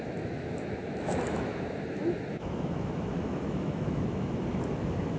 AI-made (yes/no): yes